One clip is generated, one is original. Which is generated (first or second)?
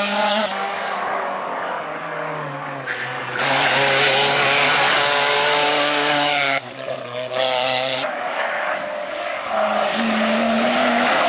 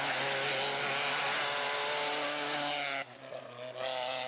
first